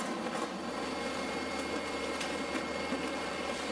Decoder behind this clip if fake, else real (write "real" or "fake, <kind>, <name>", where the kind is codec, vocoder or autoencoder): real